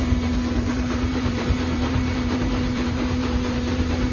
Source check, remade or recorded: remade